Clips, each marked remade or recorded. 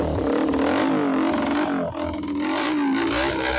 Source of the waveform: recorded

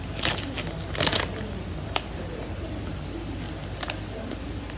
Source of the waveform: recorded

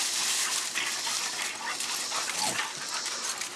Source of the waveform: recorded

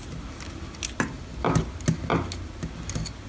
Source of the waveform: recorded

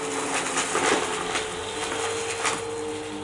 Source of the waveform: recorded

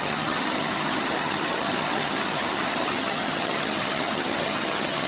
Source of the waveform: remade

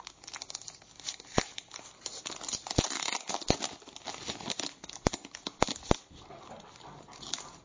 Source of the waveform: recorded